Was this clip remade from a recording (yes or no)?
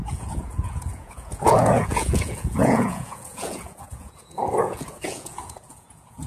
yes